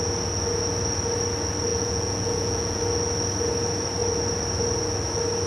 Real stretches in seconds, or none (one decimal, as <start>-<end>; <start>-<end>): 0.0-1.7; 2.8-5.5